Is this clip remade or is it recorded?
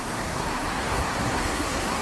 remade